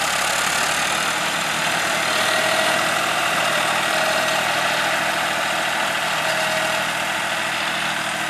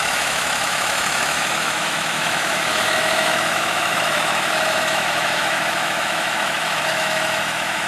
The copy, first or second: second